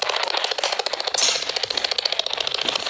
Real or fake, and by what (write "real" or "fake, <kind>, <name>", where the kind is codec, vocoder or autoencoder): real